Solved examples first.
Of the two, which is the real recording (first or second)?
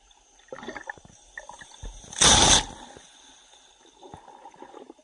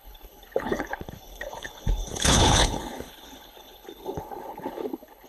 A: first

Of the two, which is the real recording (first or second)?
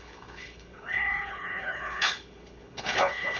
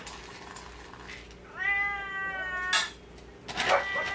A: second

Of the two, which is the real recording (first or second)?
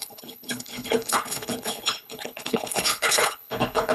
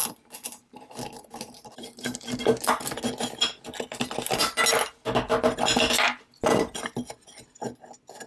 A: second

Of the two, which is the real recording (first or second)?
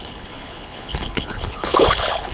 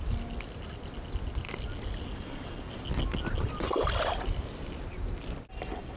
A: second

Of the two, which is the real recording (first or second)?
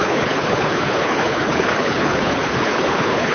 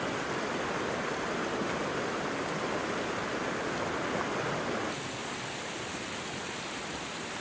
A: second